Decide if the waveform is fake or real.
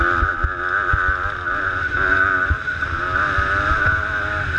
real